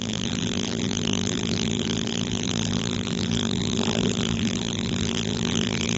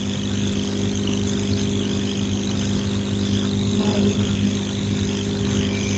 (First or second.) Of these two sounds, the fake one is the first